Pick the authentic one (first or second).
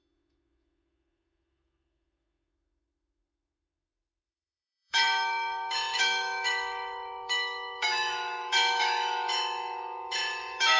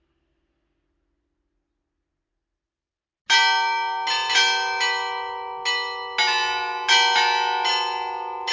second